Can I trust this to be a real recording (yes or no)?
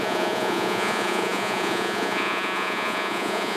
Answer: no